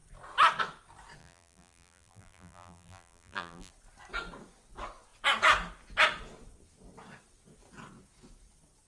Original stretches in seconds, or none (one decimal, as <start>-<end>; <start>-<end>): 0.0-1.2; 3.7-8.9